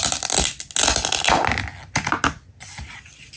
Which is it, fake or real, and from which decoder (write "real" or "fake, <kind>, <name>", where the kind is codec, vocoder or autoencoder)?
real